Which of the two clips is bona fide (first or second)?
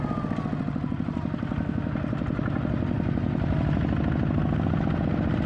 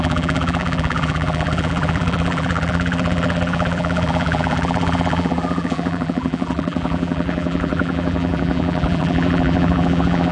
first